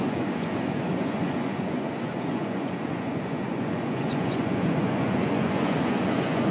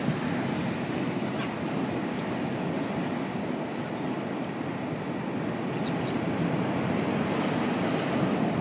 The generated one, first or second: first